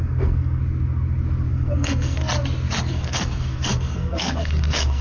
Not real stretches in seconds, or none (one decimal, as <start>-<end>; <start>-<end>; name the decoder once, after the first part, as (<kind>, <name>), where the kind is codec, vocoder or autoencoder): 0.0-0.6 (codec, SNAC); 1.5-2.2; 2.9-5.0